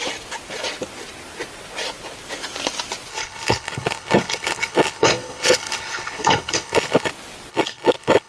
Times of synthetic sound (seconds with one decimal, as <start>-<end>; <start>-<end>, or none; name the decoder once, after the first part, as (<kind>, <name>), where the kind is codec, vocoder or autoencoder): 3.1-7.1 (codec, HILCodec); 7.5-8.3